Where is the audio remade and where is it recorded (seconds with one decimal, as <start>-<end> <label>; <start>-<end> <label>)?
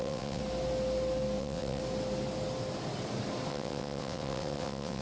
0.0-0.4 remade; 0.4-1.4 recorded; 1.4-1.8 remade; 1.8-3.5 recorded; 3.5-5.0 remade